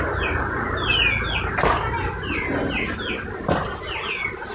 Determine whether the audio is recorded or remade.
recorded